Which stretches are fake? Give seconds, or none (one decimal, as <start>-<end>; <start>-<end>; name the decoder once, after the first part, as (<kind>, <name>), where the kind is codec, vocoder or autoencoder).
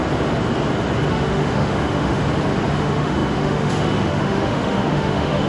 1.1-2.2 (autoencoder, DAC-VAE); 2.7-5.5